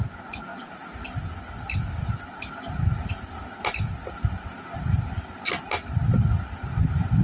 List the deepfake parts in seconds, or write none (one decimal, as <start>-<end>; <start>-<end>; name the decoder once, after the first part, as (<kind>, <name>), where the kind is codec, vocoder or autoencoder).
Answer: none